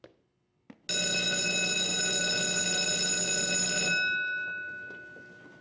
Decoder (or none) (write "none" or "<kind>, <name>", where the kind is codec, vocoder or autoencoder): none